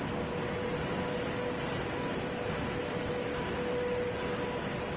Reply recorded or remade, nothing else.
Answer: recorded